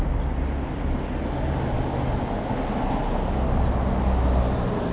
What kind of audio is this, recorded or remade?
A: recorded